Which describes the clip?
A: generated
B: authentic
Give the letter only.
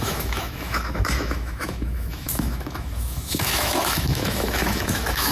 A